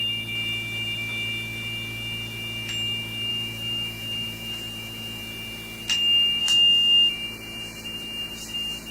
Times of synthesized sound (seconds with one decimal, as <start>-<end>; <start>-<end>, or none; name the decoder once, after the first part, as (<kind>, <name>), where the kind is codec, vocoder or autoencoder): 3.3-5.2 (autoencoder, DAC-VAE); 6.4-7.1